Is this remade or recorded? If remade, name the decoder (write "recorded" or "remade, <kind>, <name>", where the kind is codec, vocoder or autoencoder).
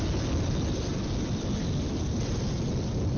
recorded